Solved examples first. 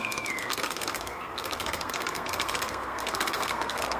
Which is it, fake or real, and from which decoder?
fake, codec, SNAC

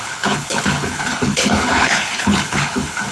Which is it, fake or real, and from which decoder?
fake, codec, HILCodec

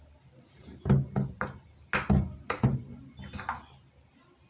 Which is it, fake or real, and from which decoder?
real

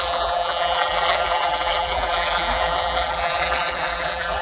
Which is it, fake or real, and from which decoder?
fake, vocoder, BigVGAN v2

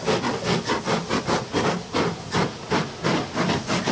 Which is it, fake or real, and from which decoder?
real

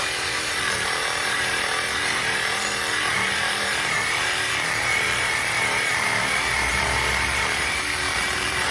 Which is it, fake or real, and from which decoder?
fake, vocoder, BigVGAN v2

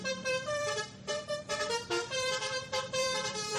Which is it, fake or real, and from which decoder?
fake, vocoder, BigVGAN v2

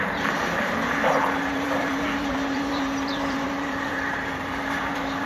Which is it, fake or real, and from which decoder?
fake, vocoder, BigVGAN v2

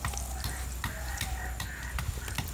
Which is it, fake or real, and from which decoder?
real